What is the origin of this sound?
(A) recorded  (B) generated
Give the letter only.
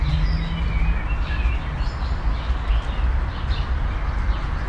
A